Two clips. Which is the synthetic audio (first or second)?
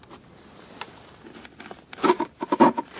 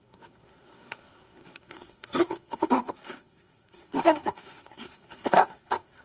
second